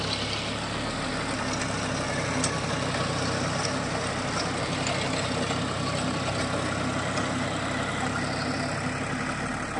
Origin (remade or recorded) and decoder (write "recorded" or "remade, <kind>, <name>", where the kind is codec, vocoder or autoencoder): recorded